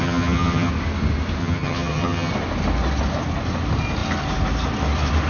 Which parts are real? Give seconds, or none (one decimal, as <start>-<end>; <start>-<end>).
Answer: 0.7-1.4; 2.3-5.3